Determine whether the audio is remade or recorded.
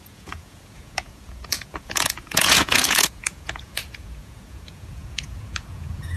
remade